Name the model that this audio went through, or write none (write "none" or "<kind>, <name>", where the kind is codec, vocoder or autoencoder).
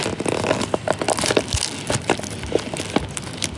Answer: none